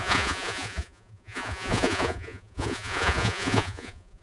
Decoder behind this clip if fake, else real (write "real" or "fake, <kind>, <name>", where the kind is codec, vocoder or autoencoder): fake, vocoder, Vocos